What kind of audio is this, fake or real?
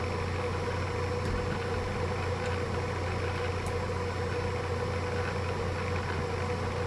real